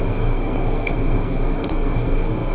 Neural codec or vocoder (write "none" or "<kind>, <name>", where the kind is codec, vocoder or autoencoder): codec, SNAC